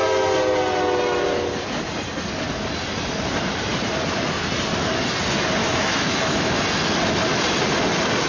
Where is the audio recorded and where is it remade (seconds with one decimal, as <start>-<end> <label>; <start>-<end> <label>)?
0.0-5.6 recorded; 5.6-6.5 remade; 6.5-8.3 recorded